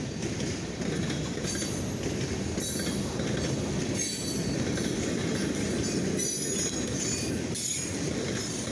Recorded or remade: recorded